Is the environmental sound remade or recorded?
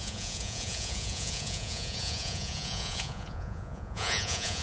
remade